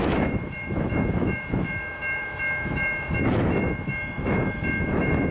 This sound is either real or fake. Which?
fake